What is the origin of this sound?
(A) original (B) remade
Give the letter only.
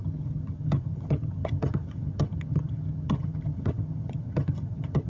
B